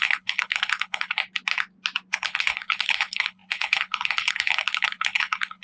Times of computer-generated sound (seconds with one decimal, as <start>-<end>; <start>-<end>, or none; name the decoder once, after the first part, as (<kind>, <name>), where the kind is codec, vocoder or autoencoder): 0.0-1.2 (codec, HILCodec); 2.1-5.6